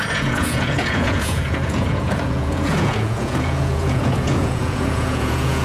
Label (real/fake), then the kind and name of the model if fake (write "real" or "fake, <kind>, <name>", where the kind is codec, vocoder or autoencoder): fake, vocoder, Vocos